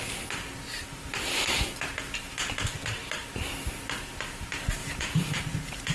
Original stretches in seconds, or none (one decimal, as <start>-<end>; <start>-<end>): 0.0-4.8; 5.4-5.9